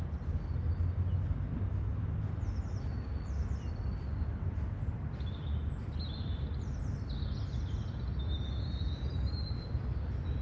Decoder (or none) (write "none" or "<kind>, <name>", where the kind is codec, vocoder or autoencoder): none